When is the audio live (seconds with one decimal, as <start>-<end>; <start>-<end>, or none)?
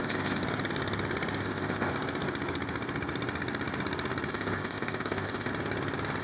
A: 0.4-1.4; 1.9-4.3; 5.5-6.2